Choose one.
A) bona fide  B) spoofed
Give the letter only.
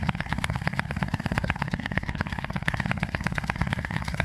B